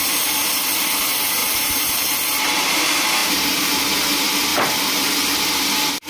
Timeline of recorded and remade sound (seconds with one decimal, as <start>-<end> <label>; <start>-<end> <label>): 0.0-1.4 recorded; 1.4-2.1 remade; 2.1-3.2 recorded; 3.2-3.8 remade; 3.8-4.5 recorded; 4.5-5.1 remade; 5.1-6.1 recorded